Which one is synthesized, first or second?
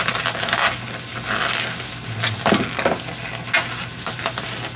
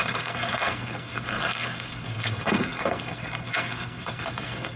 second